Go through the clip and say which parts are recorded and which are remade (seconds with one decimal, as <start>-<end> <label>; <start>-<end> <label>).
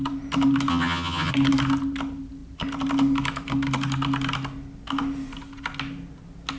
0.0-0.7 recorded; 0.7-1.3 remade; 1.3-6.6 recorded